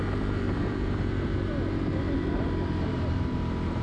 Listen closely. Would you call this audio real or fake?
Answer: fake